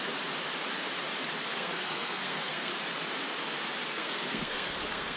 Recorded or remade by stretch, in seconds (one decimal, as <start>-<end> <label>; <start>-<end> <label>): 0.0-1.5 recorded; 1.5-2.7 remade; 2.7-3.9 recorded; 3.9-5.2 remade